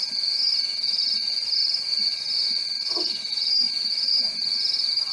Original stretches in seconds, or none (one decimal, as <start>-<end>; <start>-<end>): 0.0-5.1